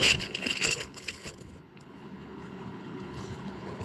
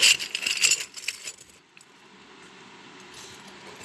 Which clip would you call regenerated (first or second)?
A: first